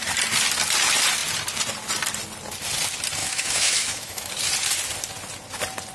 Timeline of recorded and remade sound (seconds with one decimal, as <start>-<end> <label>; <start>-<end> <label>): 0.0-3.2 recorded; 3.2-4.3 remade; 4.3-5.9 recorded